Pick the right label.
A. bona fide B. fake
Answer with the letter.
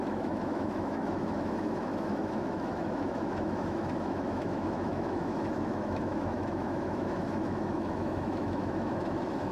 B